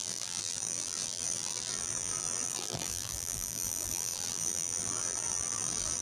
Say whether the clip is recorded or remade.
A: remade